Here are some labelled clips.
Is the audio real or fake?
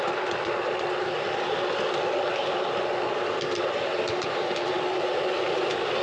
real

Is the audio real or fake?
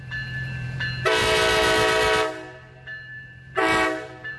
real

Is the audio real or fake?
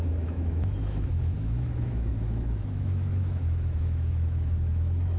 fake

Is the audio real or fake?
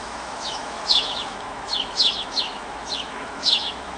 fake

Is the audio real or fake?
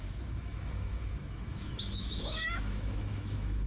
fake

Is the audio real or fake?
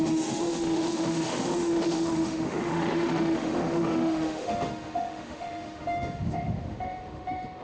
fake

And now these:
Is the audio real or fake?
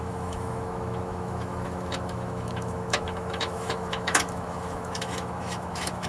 fake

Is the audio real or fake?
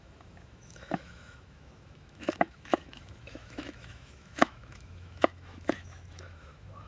fake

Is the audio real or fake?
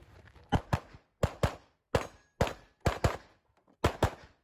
real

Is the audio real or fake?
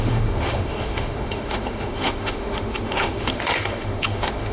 fake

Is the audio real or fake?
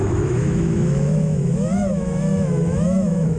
fake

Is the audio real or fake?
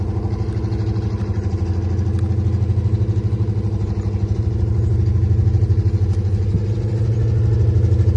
real